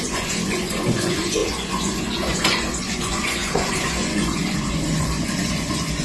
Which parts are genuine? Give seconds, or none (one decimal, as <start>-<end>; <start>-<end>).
none